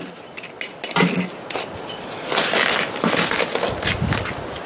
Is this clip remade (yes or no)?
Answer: no